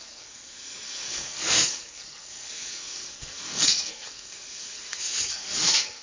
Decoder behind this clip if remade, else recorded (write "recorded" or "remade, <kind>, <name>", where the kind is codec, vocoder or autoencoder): remade, codec, SNAC